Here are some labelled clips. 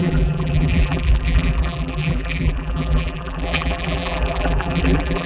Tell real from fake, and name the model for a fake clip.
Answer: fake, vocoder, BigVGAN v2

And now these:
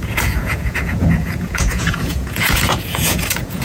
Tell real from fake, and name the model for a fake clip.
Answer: fake, vocoder, Vocos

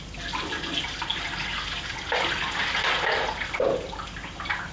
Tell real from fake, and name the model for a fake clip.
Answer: real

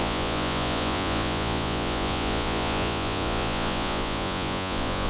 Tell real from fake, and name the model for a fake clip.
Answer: fake, vocoder, Vocos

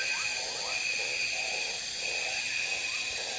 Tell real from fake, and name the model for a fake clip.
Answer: real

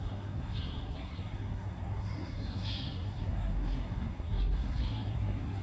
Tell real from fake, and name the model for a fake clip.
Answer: fake, codec, SNAC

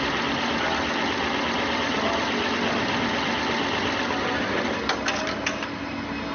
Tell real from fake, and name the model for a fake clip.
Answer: real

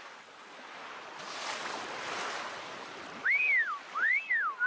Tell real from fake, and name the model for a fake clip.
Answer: real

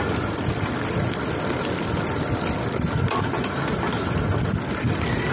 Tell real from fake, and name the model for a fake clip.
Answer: real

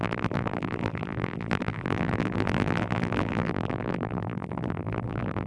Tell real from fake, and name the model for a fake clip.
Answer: fake, vocoder, BigVGAN v2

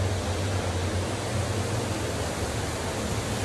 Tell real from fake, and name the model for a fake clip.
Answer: real